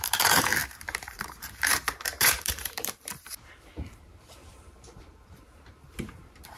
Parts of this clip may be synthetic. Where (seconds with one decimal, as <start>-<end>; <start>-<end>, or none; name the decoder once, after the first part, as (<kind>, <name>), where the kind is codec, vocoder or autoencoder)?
0.0-6.6 (vocoder, BigVGAN v2)